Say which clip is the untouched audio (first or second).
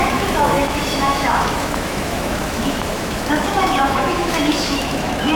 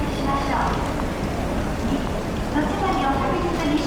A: second